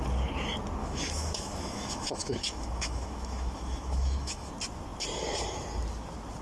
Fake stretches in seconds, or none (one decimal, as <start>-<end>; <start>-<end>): 0.8-4.5